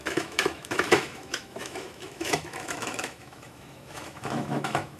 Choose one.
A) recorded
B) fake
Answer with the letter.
B